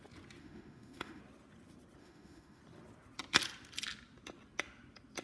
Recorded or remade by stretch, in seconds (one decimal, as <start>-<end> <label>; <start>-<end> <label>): 0.0-0.4 recorded; 0.4-1.2 remade; 1.2-2.0 recorded; 2.0-2.6 remade; 2.6-5.2 recorded